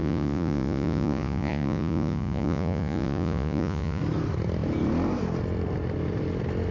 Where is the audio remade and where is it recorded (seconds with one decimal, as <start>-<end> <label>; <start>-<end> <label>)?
0.0-4.0 remade; 4.0-6.7 recorded